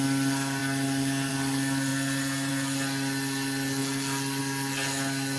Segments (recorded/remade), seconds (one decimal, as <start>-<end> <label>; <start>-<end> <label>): 0.0-5.4 recorded